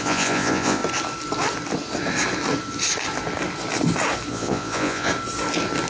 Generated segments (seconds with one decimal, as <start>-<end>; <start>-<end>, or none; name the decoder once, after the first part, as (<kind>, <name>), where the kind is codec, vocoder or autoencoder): 0.0-0.8 (vocoder, Vocos); 4.3-5.1